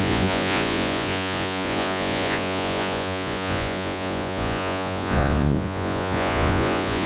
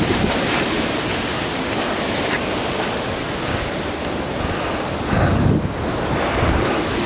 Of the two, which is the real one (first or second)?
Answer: second